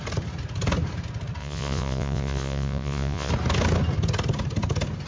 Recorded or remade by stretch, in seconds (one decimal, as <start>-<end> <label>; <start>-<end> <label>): 0.0-1.4 recorded; 1.4-3.3 remade; 3.3-5.1 recorded